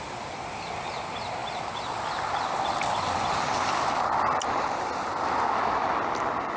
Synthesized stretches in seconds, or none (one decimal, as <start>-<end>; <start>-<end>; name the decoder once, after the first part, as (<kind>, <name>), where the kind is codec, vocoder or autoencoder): none